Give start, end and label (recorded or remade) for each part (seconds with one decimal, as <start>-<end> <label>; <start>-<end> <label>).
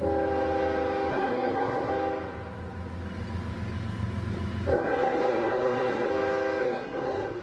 0.0-1.1 recorded; 1.1-1.9 remade; 1.9-4.7 recorded; 4.7-6.1 remade; 6.1-6.6 recorded; 6.6-7.4 remade